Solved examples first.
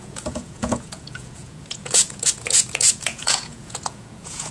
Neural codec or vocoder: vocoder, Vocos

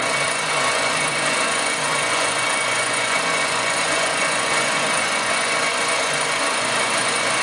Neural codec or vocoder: vocoder, Vocos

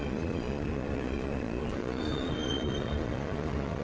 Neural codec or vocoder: vocoder, Vocos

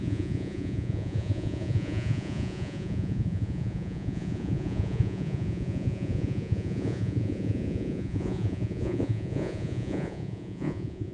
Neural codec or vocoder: vocoder, Vocos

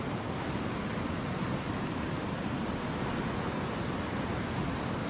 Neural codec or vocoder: none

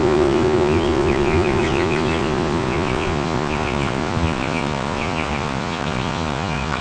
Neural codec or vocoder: vocoder, Vocos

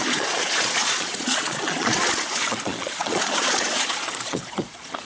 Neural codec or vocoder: vocoder, Vocos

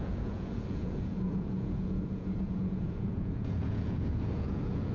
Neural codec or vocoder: vocoder, Vocos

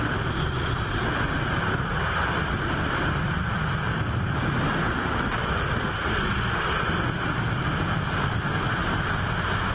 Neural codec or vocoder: none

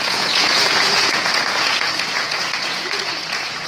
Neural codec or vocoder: vocoder, Vocos